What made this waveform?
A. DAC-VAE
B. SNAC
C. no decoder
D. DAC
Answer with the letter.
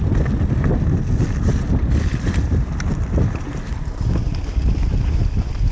C